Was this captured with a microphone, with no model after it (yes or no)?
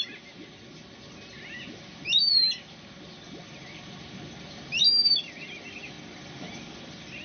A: yes